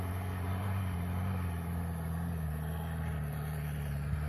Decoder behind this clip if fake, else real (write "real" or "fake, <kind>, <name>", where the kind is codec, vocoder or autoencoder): real